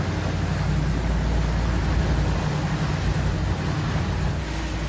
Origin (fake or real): real